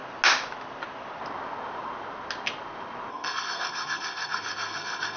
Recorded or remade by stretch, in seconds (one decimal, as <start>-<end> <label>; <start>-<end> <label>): 0.0-3.1 recorded; 3.1-5.2 remade